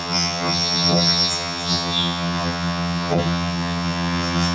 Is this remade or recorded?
remade